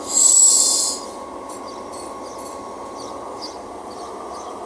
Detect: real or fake real